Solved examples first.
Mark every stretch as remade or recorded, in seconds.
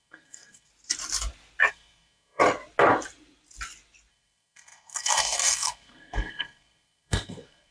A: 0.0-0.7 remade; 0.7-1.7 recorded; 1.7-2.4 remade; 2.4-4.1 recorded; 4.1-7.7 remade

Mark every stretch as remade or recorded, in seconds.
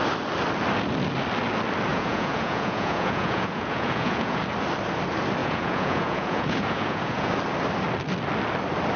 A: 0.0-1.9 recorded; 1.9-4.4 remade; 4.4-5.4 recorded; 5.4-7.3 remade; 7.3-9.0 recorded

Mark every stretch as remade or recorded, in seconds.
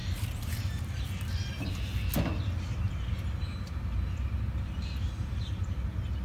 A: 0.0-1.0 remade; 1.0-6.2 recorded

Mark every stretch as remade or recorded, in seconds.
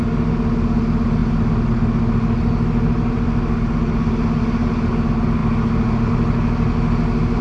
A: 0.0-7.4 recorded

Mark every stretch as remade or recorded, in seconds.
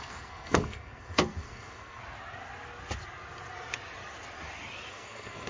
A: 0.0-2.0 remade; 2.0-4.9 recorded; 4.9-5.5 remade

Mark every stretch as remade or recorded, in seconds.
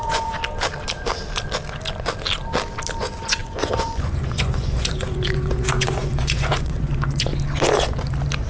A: 0.0-0.4 remade; 0.4-3.0 recorded; 3.0-7.3 remade; 7.3-8.5 recorded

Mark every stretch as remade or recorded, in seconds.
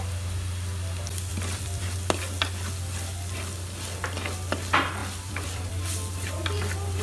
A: 0.0-1.3 recorded; 1.3-1.8 remade; 1.8-5.0 recorded; 5.0-5.7 remade; 5.7-7.0 recorded